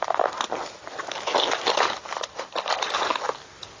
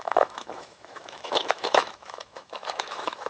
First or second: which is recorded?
first